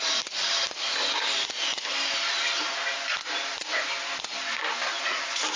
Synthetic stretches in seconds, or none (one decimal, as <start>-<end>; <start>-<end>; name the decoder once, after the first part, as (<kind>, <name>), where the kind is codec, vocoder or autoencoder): none